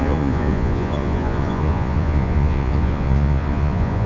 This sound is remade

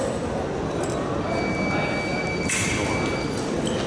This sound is recorded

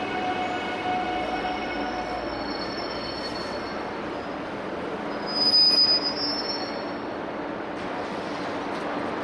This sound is recorded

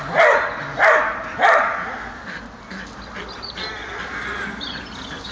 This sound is recorded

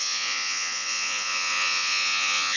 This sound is remade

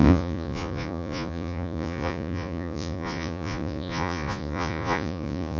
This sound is remade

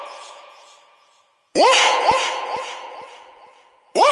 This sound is remade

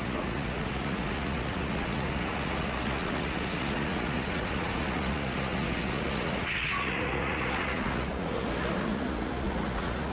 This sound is remade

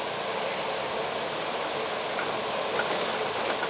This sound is recorded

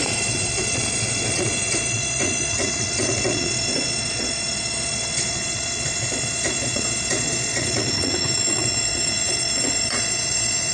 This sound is remade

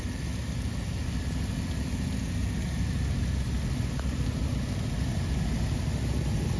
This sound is recorded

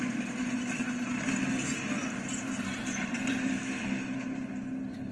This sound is recorded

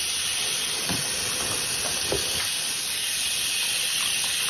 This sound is recorded